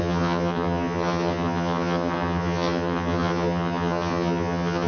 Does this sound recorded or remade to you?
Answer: remade